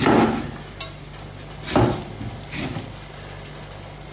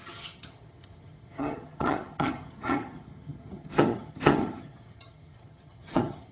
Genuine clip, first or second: first